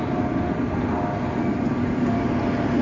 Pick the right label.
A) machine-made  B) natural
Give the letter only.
B